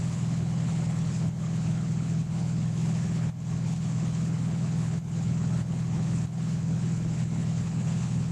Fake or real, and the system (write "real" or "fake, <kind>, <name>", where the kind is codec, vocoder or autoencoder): fake, codec, HILCodec